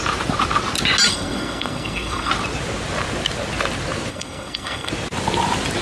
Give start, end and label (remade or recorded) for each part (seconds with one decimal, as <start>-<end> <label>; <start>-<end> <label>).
0.0-1.1 recorded; 1.1-2.3 remade; 2.3-4.1 recorded; 4.1-4.9 remade; 4.9-5.8 recorded